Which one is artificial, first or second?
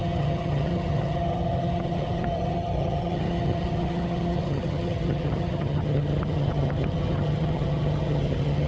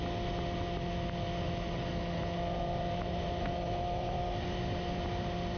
first